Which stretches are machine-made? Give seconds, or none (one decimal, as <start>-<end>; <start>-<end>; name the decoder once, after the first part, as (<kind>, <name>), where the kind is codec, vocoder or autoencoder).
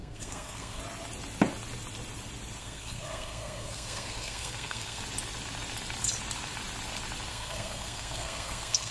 0.0-0.8 (codec, SNAC); 2.6-5.0; 7.3-8.9